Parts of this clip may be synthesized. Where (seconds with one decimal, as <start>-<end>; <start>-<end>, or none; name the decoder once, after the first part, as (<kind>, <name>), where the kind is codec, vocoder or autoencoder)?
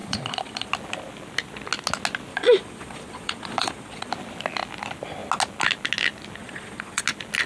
0.0-0.7 (vocoder, Vocos); 2.3-4.1; 6.4-7.0